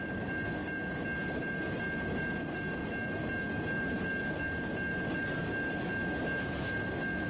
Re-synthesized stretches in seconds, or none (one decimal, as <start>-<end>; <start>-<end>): none